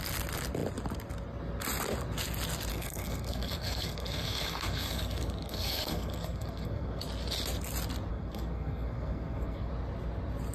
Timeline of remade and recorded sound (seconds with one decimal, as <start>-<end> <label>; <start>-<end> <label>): 0.0-2.7 recorded; 2.7-7.0 remade; 7.0-8.1 recorded; 8.1-9.7 remade; 9.7-10.5 recorded